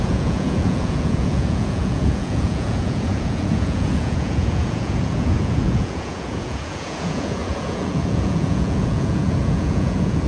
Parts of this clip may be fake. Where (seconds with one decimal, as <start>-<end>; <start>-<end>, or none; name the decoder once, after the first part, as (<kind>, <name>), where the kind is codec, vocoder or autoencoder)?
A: 0.0-10.3 (vocoder, Vocos)